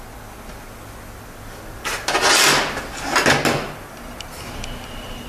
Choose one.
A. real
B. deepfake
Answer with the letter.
A